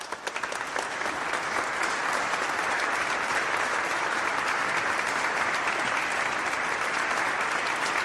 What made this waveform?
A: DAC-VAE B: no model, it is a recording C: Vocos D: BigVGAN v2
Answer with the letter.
D